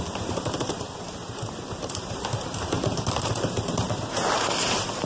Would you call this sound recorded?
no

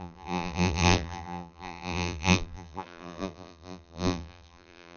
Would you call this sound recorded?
no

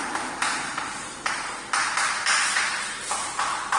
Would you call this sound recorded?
yes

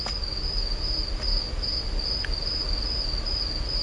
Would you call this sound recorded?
yes